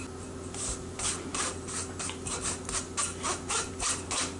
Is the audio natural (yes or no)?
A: yes